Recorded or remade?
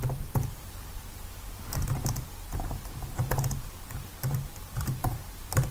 remade